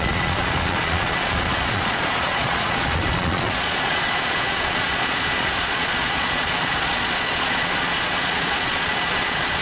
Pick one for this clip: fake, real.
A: fake